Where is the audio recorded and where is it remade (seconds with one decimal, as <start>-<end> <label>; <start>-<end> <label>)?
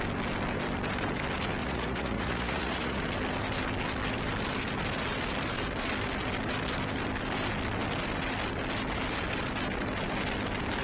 0.0-1.6 recorded; 1.6-3.0 remade; 3.0-10.8 recorded